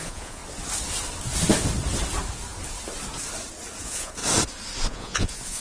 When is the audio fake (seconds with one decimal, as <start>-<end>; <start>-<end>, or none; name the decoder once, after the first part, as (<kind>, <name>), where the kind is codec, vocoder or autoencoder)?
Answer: 0.0-0.4 (vocoder, Vocos); 3.8-4.2; 4.9-5.6